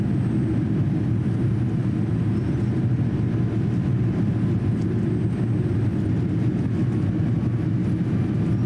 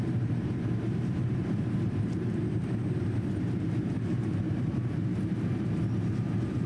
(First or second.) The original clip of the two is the first